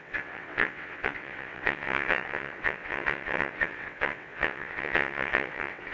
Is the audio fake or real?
fake